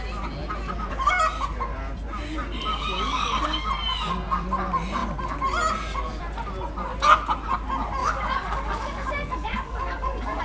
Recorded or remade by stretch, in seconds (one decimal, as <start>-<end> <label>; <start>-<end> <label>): 0.0-2.7 recorded; 2.7-3.7 remade; 3.7-8.0 recorded; 8.0-10.4 remade